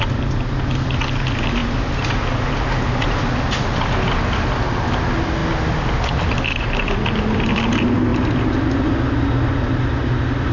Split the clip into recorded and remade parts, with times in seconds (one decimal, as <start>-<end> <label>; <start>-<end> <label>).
0.0-10.5 recorded